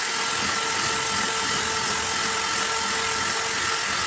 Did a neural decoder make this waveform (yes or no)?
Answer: no